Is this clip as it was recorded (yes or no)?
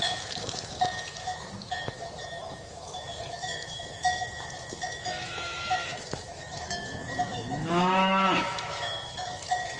no